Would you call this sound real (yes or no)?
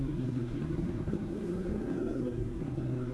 no